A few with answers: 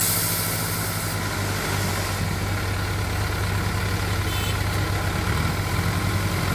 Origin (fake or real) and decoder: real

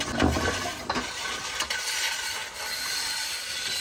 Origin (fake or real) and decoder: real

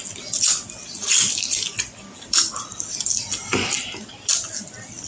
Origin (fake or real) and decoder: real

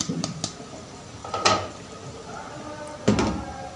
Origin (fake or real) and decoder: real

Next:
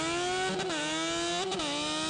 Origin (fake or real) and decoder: real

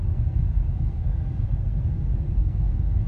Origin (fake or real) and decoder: fake, codec, SNAC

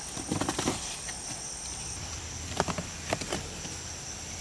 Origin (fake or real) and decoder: real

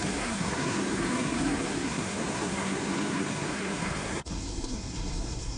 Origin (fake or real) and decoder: fake, codec, SNAC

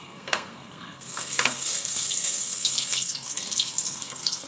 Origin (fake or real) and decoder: fake, codec, SNAC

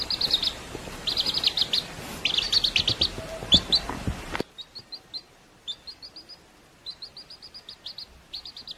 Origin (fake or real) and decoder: real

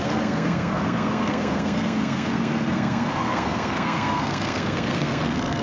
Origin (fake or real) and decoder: fake, codec, SNAC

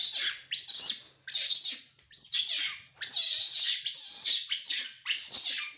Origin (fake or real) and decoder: real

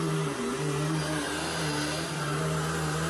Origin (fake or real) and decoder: real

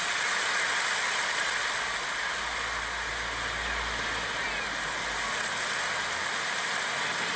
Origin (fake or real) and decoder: real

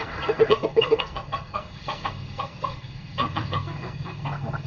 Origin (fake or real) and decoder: fake, codec, SNAC